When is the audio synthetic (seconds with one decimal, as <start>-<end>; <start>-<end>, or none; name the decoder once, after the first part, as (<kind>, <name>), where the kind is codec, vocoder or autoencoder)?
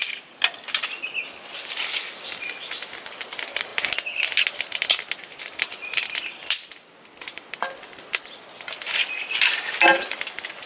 none